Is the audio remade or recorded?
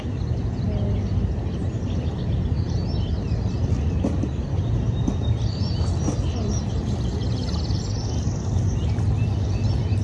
recorded